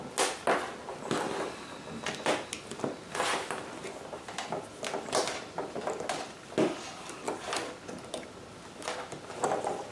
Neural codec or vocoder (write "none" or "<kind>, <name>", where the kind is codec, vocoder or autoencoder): none